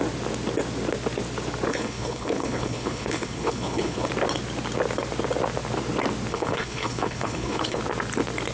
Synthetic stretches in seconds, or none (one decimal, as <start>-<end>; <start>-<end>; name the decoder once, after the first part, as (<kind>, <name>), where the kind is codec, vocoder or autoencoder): 1.7-4.1 (codec, HILCodec); 6.3-7.8